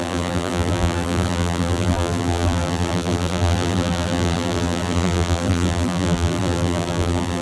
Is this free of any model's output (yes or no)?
no